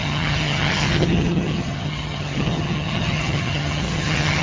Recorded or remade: remade